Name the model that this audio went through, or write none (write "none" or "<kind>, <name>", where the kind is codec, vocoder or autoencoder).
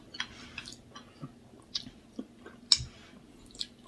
none